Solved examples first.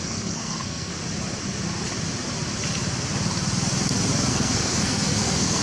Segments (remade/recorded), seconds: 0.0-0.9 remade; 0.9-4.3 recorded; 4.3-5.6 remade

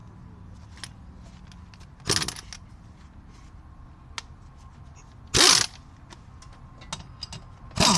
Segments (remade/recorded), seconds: 0.0-8.0 recorded

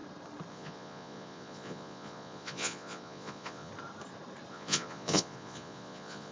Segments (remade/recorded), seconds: 0.0-0.5 recorded; 0.5-3.7 remade; 3.7-4.5 recorded; 4.5-6.3 remade

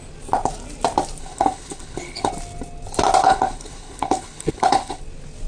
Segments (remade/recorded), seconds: 0.0-1.2 recorded; 1.2-2.3 remade; 2.3-3.2 recorded; 3.2-5.0 remade; 5.0-5.5 recorded

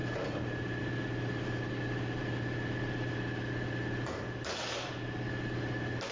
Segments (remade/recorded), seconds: 0.0-6.1 recorded

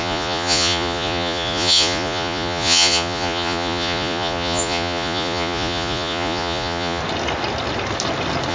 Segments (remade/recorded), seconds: 0.0-7.0 remade; 7.0-8.5 recorded